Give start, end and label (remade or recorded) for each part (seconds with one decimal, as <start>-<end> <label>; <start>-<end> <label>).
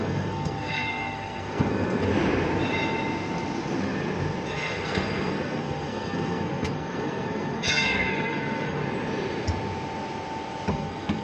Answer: 0.0-2.1 remade; 2.1-4.5 recorded; 4.5-8.8 remade; 8.8-10.7 recorded; 10.7-11.2 remade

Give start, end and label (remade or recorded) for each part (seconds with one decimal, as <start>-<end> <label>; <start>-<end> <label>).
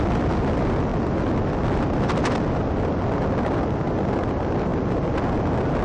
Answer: 0.0-5.8 recorded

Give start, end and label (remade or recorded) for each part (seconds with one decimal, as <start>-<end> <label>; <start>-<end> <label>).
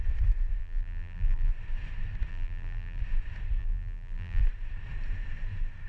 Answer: 0.0-0.6 recorded; 0.6-1.5 remade; 1.5-2.3 recorded; 2.3-3.0 remade; 3.0-3.6 recorded; 3.6-4.4 remade; 4.4-5.9 recorded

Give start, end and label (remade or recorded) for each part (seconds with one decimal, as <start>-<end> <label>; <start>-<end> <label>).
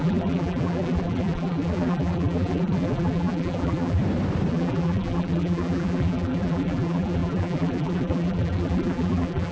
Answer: 0.0-4.0 remade; 4.0-4.5 recorded; 4.5-9.5 remade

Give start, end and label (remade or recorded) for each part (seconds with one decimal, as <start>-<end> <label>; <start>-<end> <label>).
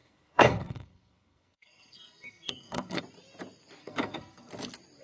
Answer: 0.0-3.0 remade; 3.0-3.8 recorded; 3.8-4.5 remade; 4.5-5.0 recorded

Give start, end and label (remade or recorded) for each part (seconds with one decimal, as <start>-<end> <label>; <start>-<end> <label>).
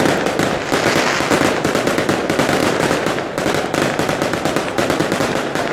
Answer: 0.0-2.6 recorded; 2.6-3.7 remade; 3.7-5.0 recorded; 5.0-5.7 remade